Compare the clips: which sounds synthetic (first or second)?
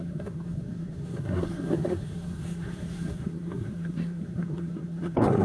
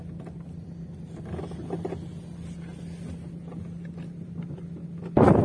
first